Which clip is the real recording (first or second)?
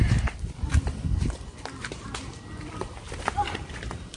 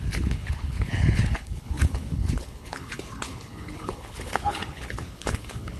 first